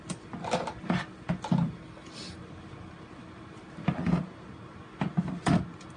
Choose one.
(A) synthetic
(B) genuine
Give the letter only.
B